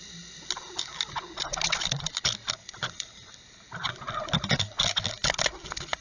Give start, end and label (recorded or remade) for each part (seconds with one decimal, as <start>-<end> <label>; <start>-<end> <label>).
0.0-2.6 recorded; 2.6-3.3 remade; 3.3-6.0 recorded